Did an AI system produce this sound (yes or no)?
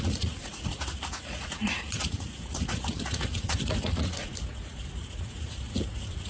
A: yes